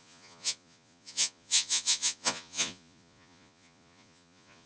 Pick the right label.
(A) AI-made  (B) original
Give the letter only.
A